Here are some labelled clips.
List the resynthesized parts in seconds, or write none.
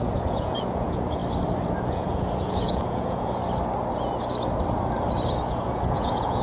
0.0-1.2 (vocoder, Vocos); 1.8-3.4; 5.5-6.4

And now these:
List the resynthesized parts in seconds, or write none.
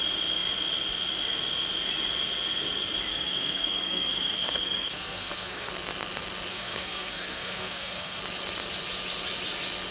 3.1-5.7 (codec, SNAC); 6.5-8.2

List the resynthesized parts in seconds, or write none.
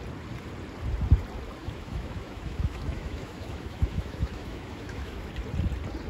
1.6-5.3 (autoencoder, DAC-VAE)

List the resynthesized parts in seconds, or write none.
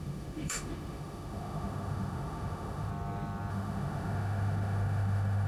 0.0-2.9 (autoencoder, DAC-VAE); 3.5-5.5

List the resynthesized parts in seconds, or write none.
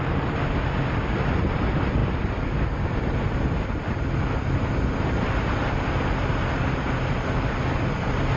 none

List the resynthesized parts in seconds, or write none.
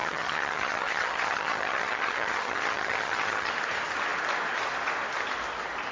0.0-3.5 (vocoder, HiFi-GAN)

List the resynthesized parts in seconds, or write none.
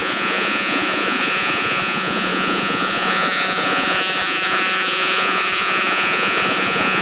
0.0-7.0 (vocoder, Vocos)